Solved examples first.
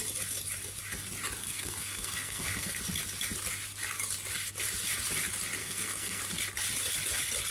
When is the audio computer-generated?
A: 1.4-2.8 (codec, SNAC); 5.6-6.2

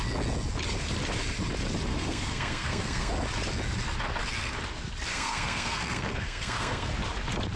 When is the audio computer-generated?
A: 1.9-3.1 (codec, SNAC); 5.1-6.9

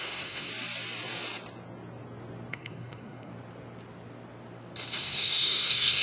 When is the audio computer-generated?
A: 0.0-0.5 (codec, SNAC); 2.5-3.3; 5.0-6.0